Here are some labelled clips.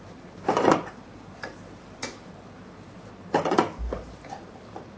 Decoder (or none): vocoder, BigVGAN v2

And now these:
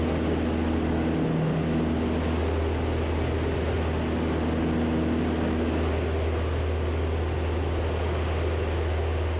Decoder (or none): none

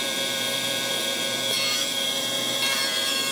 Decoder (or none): vocoder, BigVGAN v2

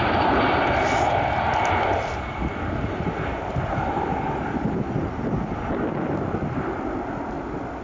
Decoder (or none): vocoder, BigVGAN v2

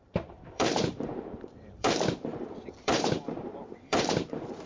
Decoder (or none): vocoder, BigVGAN v2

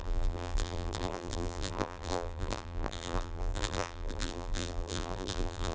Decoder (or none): vocoder, BigVGAN v2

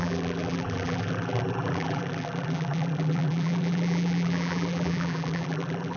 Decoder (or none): vocoder, BigVGAN v2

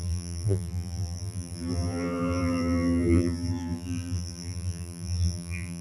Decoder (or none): vocoder, BigVGAN v2